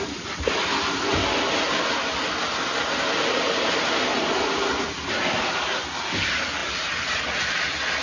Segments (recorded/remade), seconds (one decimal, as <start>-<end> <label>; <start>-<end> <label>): 0.0-8.0 recorded